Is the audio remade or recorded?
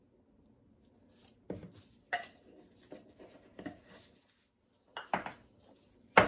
recorded